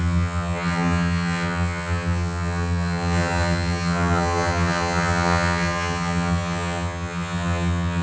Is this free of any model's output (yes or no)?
no